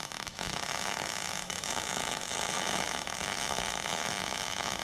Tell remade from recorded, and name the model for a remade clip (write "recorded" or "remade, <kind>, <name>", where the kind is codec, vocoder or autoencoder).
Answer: remade, autoencoder, DAC-VAE